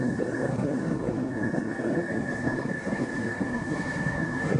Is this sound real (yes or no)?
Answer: no